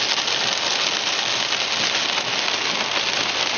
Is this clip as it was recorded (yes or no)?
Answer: yes